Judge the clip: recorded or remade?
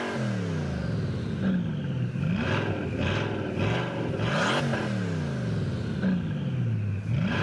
recorded